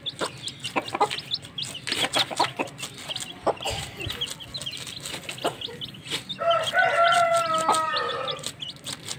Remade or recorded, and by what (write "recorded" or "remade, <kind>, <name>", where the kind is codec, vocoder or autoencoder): recorded